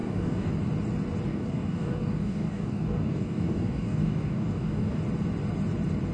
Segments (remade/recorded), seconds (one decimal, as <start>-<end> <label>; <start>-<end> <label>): 0.0-0.5 remade; 0.5-1.3 recorded; 1.3-5.0 remade; 5.0-6.1 recorded